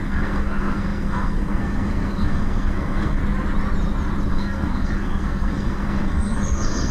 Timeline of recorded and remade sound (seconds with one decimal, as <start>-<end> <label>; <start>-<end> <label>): 0.0-3.2 remade; 3.2-4.3 recorded; 4.3-6.9 remade